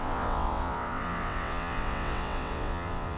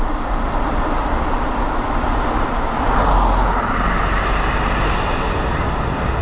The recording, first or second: second